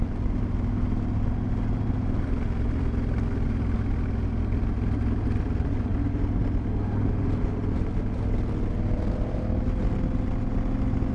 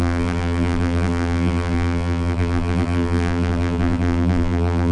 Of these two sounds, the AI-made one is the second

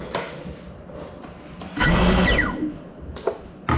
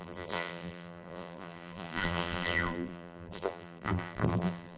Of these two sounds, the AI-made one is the second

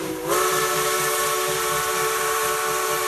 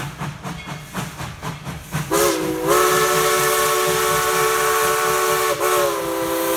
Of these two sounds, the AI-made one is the first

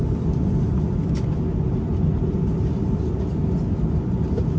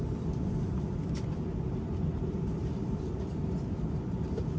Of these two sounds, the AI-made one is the second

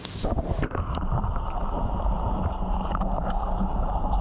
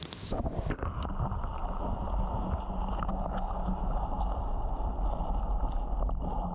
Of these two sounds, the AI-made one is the first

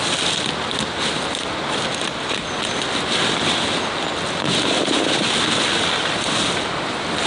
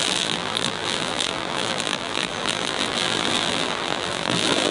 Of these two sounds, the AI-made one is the second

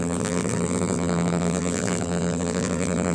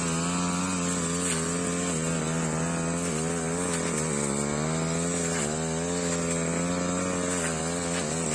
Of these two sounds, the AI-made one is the first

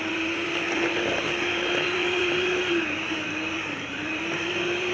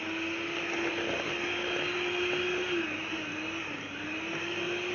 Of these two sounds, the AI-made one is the first